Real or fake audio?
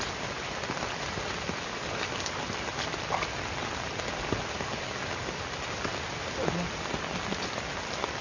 real